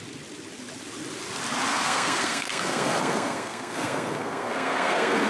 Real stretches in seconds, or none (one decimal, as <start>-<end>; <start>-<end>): 0.0-1.7